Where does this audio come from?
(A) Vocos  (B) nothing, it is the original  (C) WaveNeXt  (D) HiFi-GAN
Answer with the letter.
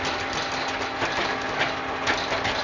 B